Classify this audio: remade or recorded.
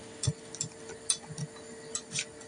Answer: recorded